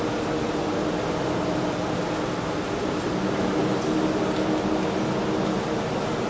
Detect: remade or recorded recorded